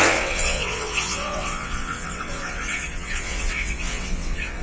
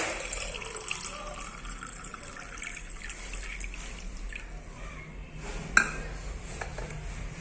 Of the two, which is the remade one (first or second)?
first